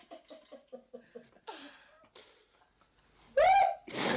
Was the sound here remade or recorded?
recorded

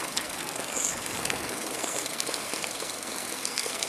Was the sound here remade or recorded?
remade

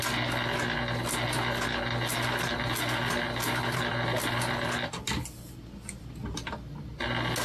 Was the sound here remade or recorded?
recorded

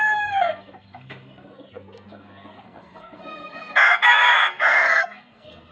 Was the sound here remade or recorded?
remade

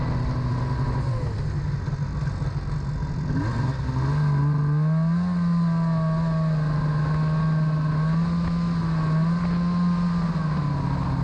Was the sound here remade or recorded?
recorded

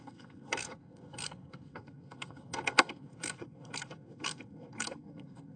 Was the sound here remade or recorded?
remade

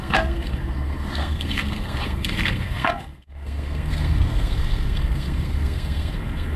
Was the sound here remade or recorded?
remade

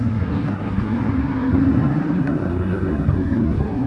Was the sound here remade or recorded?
remade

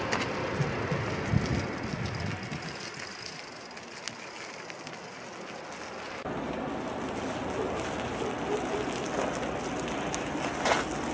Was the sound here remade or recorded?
recorded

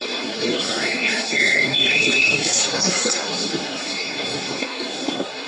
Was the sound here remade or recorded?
remade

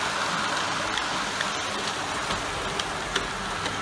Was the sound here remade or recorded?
recorded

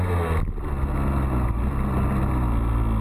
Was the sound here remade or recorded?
recorded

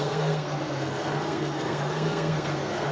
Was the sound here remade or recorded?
remade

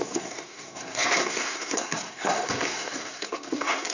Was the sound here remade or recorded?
remade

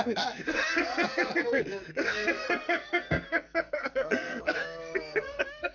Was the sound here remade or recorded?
remade